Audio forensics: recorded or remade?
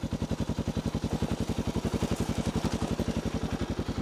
recorded